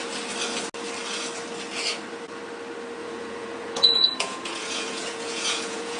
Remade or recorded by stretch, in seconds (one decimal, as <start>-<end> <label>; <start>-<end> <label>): 0.0-3.0 recorded; 3.0-6.0 remade